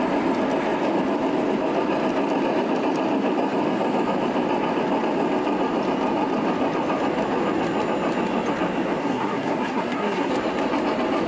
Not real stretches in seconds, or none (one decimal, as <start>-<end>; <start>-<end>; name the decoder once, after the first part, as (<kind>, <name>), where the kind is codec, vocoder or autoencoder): 9.0-10.3 (codec, SNAC)